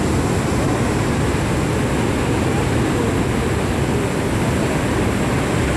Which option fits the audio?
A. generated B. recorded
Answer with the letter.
B